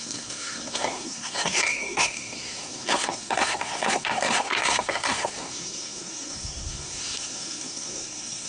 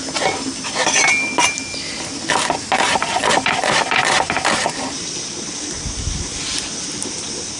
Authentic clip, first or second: second